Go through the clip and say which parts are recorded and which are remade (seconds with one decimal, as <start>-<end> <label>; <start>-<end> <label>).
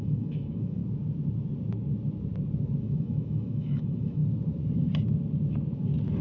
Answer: 0.0-0.8 remade; 0.8-2.8 recorded; 2.8-4.2 remade; 4.2-6.2 recorded